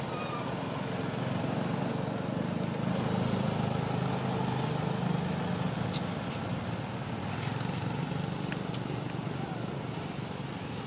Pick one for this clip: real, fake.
real